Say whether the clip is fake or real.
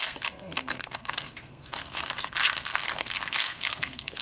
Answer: fake